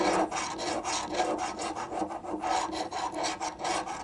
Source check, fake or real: real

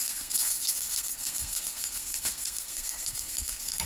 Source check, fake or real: fake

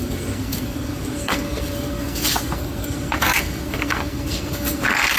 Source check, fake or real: fake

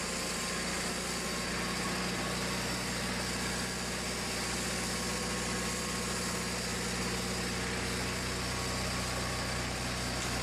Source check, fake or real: real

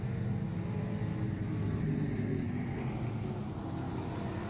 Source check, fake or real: real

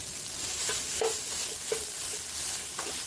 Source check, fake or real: real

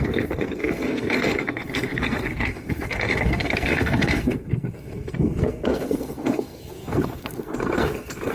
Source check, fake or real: fake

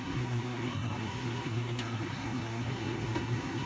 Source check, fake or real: fake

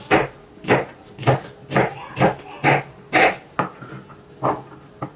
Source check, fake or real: real